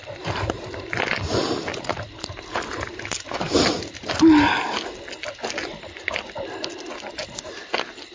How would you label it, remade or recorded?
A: recorded